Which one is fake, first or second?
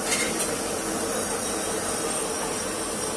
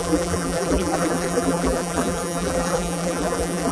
second